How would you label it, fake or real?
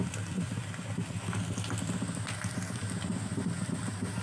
real